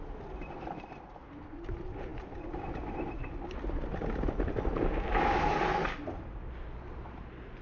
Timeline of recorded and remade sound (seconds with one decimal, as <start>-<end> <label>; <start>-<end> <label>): 0.0-7.6 recorded